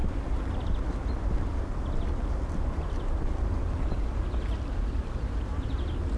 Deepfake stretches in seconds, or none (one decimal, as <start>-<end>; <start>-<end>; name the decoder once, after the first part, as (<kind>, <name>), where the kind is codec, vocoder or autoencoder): none